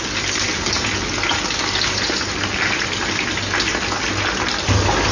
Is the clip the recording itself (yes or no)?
yes